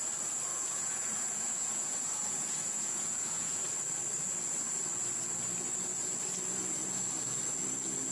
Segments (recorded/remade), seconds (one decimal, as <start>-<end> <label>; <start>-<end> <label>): 0.0-0.5 recorded; 0.5-3.6 remade; 3.6-8.1 recorded